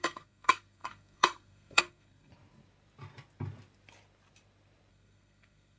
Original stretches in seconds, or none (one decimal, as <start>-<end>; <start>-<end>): 2.3-4.9

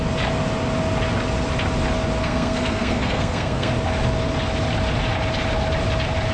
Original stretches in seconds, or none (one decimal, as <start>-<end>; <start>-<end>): 0.0-2.2; 3.7-6.3

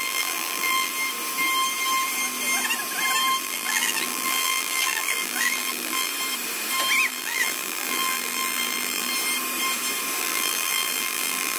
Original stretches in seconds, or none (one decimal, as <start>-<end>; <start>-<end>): 0.9-3.4; 6.1-7.1; 9.1-10.2

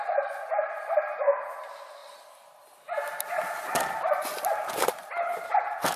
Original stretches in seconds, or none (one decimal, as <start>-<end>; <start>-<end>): 0.0-6.0

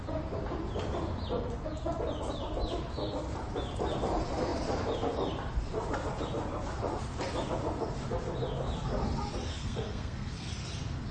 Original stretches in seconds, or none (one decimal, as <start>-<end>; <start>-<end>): 0.0-9.5; 10.5-11.1

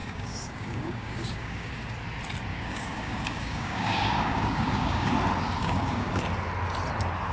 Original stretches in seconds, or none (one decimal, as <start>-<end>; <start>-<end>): 1.9-2.5; 5.1-5.6; 6.2-7.3

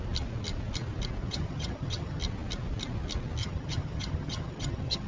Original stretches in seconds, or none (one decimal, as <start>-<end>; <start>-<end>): 0.0-1.2; 2.2-3.4

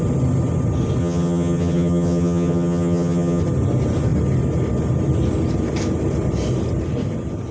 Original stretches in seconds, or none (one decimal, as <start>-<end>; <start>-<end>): 0.0-1.0; 3.4-7.5